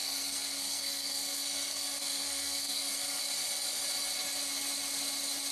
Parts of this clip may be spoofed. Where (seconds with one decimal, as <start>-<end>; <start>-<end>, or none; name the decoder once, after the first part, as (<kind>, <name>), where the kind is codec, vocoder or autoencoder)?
0.0-3.2 (codec, SNAC)

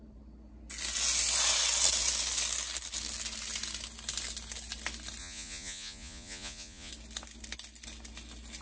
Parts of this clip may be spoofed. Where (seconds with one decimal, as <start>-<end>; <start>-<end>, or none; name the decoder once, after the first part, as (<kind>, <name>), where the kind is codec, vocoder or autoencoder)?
5.2-6.9 (vocoder, Vocos)

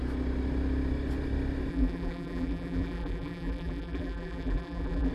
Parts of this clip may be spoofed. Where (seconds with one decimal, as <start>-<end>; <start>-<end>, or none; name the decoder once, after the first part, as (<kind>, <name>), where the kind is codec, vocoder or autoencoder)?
1.7-5.1 (vocoder, BigVGAN v2)

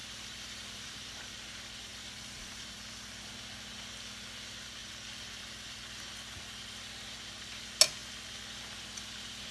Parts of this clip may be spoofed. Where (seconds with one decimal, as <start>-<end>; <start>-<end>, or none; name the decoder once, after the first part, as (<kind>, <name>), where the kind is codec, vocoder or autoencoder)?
0.0-1.3 (vocoder, BigVGAN v2); 1.9-3.3; 4.8-5.8

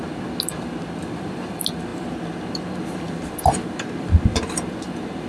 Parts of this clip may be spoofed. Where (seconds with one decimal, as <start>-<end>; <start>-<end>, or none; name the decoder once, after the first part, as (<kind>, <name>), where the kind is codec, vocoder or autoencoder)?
none